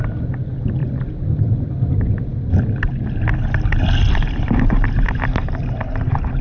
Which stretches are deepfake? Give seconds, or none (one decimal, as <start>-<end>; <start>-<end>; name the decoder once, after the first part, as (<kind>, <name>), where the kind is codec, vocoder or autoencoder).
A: none